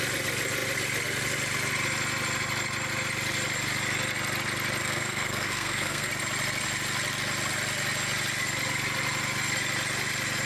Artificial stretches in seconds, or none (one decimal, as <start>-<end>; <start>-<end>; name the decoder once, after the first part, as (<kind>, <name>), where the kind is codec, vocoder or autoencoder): 4.8-6.1 (codec, SNAC)